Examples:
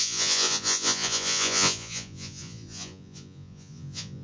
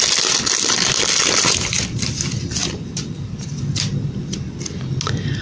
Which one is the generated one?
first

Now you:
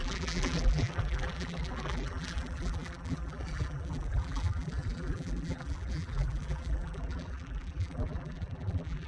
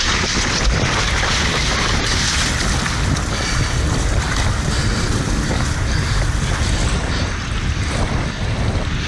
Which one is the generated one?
first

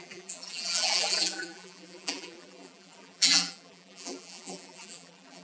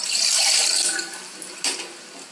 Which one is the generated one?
first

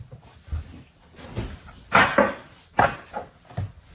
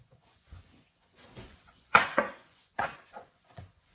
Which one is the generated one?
second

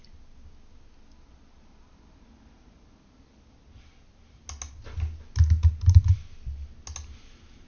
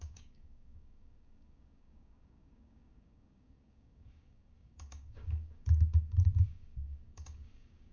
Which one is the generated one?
second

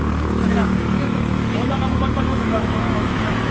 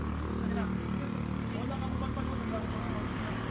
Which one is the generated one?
first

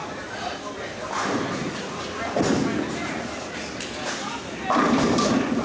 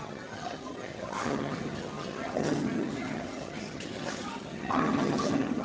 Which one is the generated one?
second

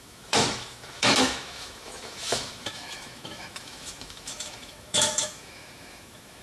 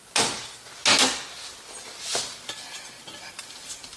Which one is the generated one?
first